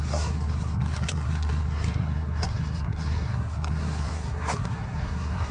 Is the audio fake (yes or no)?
yes